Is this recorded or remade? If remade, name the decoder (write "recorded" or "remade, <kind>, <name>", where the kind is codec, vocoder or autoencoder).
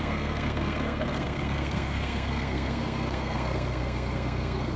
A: remade, codec, SNAC